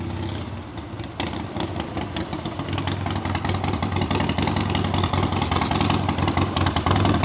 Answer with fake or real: real